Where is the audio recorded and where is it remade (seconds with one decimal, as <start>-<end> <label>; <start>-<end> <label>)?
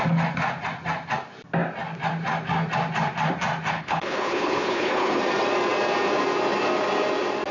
0.0-3.7 recorded; 3.7-5.2 remade; 5.2-7.5 recorded